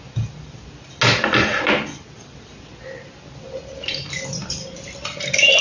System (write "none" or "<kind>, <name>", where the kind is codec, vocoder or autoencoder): none